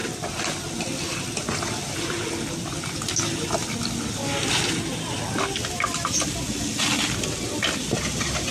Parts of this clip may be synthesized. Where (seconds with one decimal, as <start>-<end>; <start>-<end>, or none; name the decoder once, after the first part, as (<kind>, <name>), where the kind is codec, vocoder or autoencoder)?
none